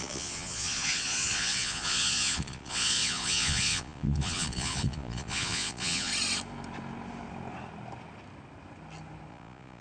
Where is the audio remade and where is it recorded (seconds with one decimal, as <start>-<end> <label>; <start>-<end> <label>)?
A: 0.0-6.1 remade; 6.1-9.3 recorded; 9.3-9.8 remade